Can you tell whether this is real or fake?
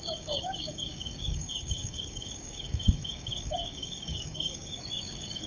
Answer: fake